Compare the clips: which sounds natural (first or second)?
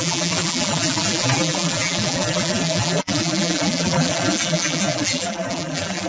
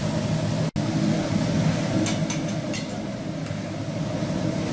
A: second